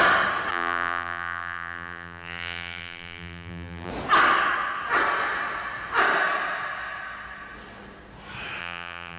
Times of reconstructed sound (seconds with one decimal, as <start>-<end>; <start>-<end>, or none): 0.5-3.9; 8.6-9.2